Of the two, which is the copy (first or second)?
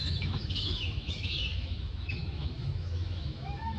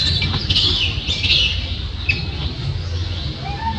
first